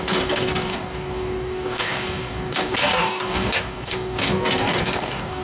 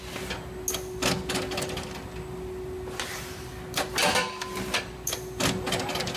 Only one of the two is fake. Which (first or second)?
first